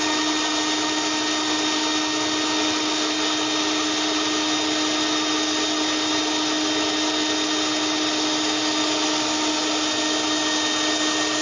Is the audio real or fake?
real